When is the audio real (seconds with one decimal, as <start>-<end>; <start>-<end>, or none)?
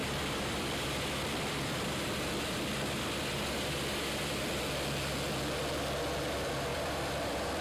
4.6-6.7